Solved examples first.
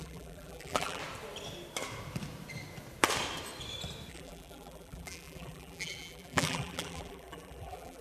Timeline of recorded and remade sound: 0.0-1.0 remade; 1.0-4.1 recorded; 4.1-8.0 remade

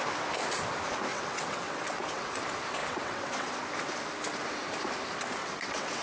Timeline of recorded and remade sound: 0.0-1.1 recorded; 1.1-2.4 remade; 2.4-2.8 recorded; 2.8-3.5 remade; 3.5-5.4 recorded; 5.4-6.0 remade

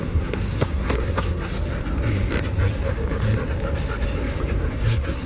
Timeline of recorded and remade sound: 0.0-1.5 remade; 1.5-4.7 recorded; 4.7-5.3 remade

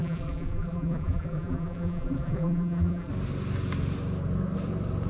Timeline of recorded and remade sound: 0.0-3.1 remade; 3.1-5.1 recorded

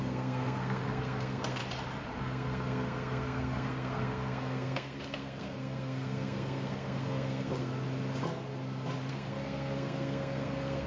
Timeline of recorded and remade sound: 0.0-1.6 remade; 1.6-2.2 recorded; 2.2-7.7 remade; 7.7-9.1 recorded; 9.1-10.9 remade